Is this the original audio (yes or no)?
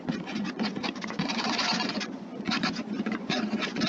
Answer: no